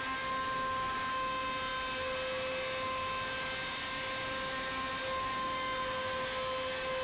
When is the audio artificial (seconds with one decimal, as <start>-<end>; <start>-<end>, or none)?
none